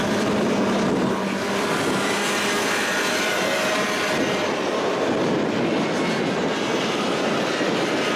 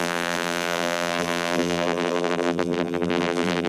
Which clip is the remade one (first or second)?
second